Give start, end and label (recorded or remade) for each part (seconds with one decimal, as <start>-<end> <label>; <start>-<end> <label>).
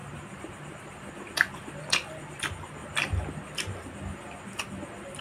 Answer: 0.0-2.4 remade; 2.4-5.2 recorded